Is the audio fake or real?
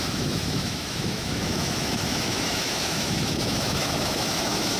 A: fake